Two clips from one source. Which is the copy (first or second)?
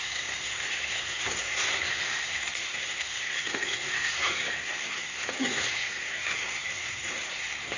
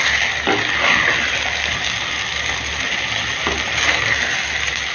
first